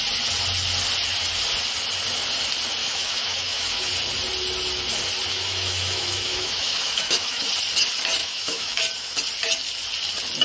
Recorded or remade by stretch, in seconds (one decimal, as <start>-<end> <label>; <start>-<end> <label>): 0.0-2.8 recorded; 2.8-3.9 remade; 3.9-5.3 recorded; 5.3-7.5 remade; 7.5-8.2 recorded; 8.2-8.8 remade; 8.8-10.4 recorded